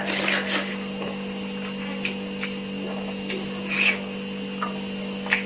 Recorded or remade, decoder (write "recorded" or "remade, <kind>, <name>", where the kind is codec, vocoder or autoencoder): recorded